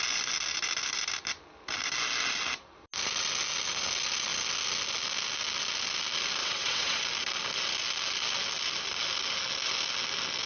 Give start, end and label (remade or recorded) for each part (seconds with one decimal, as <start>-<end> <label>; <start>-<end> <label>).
0.0-6.4 recorded; 6.4-7.0 remade; 7.0-10.5 recorded